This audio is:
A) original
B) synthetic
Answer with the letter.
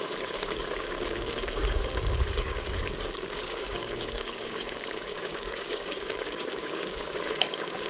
B